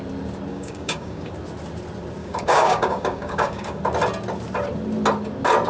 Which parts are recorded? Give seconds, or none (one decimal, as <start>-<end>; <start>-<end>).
0.0-0.5; 1.3-2.2; 3.8-5.7